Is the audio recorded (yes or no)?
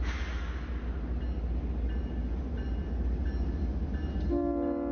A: yes